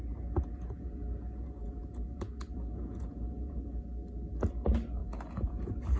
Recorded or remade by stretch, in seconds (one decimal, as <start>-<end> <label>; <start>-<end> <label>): 0.0-3.6 remade; 3.6-5.0 recorded; 5.0-6.0 remade